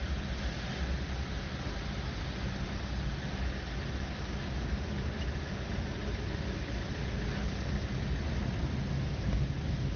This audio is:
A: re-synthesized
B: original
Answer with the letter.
B